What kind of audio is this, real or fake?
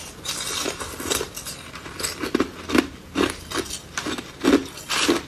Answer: real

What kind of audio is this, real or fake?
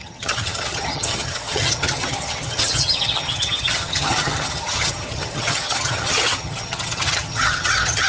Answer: fake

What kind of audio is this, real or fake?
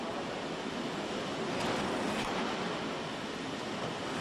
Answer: real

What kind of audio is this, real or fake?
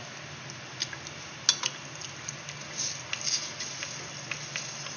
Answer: real